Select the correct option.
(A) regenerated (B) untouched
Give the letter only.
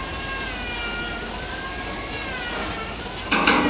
B